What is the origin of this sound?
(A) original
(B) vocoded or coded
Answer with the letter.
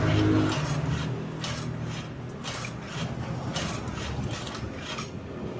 A